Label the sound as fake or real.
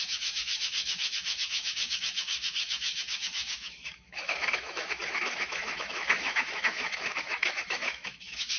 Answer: fake